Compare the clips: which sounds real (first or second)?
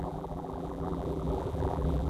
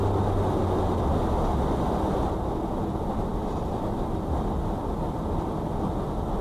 second